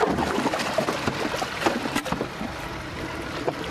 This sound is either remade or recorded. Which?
recorded